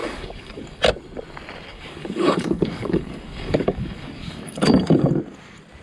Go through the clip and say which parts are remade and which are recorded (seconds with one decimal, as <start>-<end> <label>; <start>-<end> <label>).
0.0-0.8 remade; 0.8-1.7 recorded; 1.7-5.1 remade; 5.1-5.8 recorded